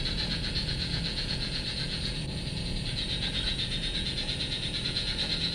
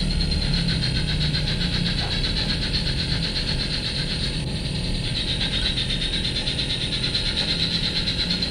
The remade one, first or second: first